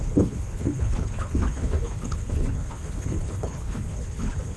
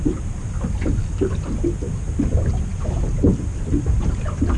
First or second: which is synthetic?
first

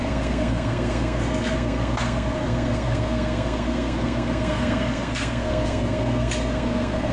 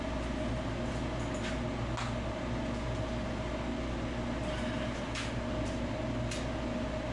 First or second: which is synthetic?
first